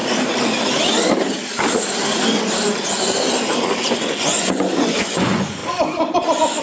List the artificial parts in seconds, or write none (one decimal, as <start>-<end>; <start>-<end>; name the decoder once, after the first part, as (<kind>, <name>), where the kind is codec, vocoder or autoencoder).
3.9-5.6 (vocoder, Vocos)